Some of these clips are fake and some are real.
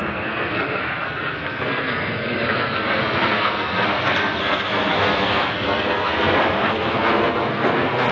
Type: fake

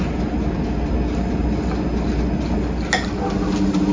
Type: real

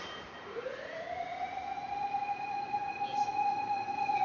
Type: fake